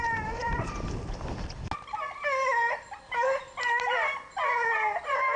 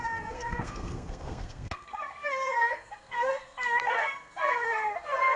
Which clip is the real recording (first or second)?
first